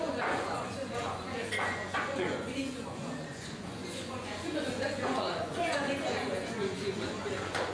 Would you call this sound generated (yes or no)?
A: yes